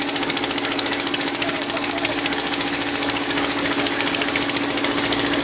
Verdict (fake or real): fake